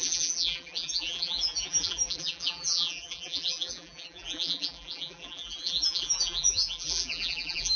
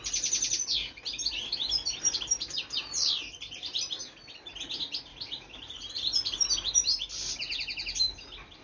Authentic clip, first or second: second